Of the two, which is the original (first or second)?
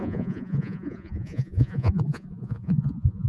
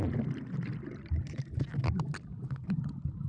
second